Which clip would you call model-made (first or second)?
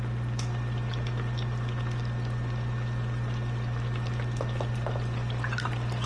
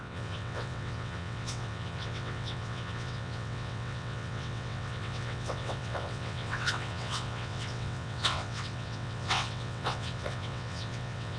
second